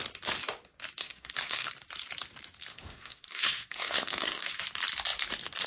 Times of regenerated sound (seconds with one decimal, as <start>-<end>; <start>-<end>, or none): 1.0-1.7; 2.7-4.6